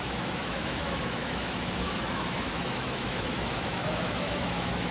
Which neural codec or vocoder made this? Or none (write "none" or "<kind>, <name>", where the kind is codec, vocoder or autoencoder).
autoencoder, DAC-VAE